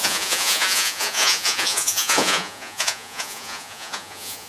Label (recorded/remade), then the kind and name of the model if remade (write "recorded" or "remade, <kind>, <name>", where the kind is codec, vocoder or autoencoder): remade, vocoder, Vocos